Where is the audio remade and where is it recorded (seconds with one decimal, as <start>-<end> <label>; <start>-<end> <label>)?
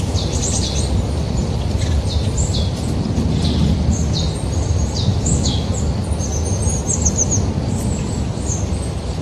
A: 0.0-5.1 recorded; 5.1-5.7 remade; 5.7-9.2 recorded